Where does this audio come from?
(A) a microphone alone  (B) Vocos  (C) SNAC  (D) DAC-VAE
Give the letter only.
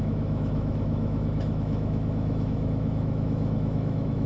D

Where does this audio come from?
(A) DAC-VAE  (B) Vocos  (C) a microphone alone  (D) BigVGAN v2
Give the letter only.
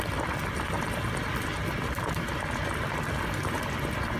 C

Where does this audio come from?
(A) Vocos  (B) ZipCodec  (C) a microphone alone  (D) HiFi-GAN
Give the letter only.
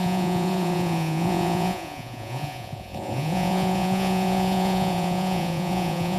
A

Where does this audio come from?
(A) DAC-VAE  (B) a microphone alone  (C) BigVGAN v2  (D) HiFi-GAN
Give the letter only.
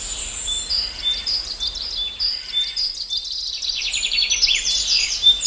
C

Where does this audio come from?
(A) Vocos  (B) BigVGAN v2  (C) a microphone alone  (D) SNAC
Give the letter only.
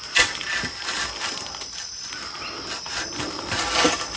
C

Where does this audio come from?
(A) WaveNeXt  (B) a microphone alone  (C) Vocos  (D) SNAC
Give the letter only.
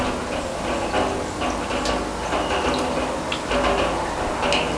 B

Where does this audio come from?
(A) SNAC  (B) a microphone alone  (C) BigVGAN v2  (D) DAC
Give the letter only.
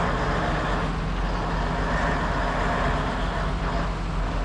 B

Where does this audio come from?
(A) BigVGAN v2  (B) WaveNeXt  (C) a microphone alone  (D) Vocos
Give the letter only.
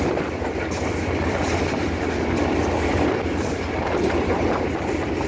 C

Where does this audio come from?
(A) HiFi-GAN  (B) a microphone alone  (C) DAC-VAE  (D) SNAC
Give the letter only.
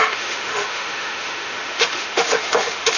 C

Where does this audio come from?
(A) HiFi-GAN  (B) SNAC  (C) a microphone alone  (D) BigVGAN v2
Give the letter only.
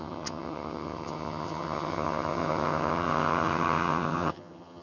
A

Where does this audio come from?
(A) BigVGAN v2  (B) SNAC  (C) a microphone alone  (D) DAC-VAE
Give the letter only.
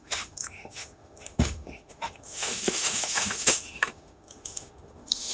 D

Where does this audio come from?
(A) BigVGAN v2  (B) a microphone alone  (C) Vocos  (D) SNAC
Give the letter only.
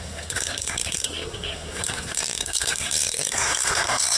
D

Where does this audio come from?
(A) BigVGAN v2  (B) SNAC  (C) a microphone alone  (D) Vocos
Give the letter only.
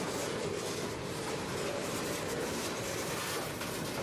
C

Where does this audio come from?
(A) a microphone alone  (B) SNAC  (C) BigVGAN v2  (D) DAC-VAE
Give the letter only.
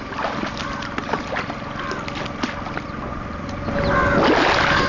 A